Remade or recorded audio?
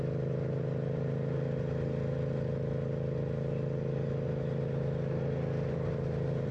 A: recorded